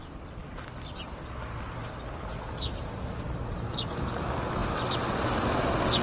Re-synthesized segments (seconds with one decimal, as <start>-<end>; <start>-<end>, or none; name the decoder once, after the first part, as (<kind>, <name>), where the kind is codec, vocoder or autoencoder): none